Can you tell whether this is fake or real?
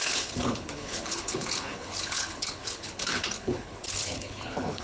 fake